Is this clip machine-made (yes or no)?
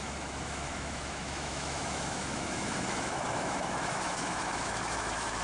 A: yes